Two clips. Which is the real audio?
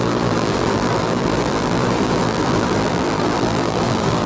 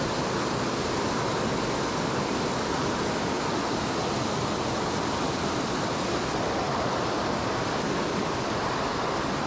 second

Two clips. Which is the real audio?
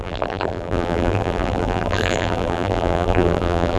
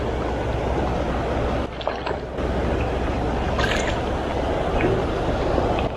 second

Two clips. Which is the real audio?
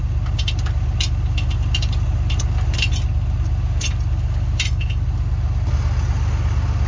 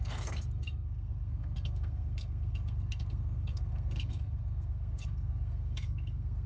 first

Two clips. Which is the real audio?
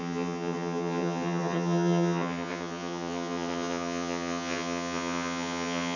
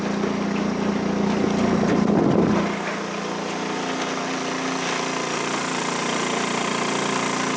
second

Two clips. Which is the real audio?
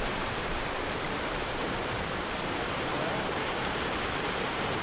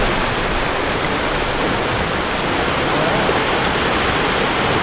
second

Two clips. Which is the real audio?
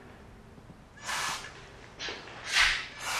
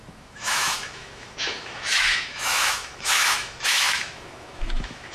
first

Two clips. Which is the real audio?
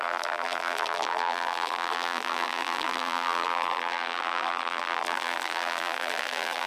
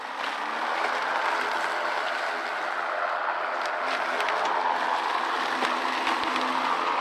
second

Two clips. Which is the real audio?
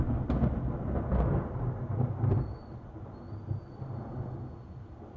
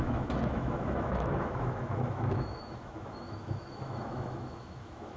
first